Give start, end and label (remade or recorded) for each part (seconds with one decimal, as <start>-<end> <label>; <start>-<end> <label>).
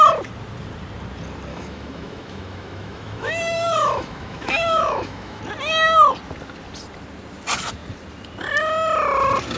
0.0-1.5 recorded; 1.5-5.4 remade; 5.4-9.6 recorded